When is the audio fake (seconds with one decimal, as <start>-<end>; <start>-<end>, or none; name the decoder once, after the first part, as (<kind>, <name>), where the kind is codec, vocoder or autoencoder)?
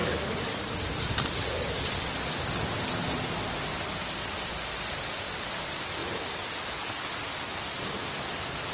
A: none